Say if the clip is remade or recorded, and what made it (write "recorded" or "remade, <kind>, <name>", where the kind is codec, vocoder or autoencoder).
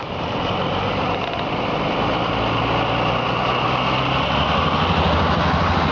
recorded